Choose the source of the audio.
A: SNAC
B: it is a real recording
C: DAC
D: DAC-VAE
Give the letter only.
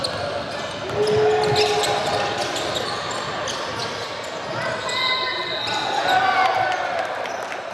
B